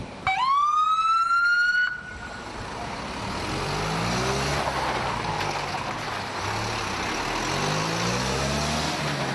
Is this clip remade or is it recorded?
recorded